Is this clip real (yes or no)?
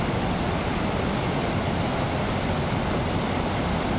yes